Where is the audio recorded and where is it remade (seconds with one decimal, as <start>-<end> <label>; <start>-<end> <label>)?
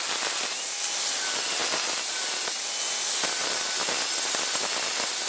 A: 0.0-5.3 recorded